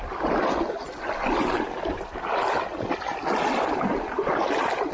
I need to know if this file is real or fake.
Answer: real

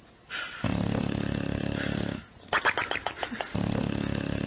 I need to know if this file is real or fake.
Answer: real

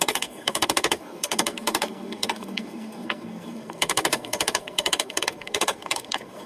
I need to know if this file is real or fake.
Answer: fake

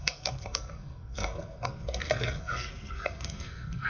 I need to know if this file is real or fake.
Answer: fake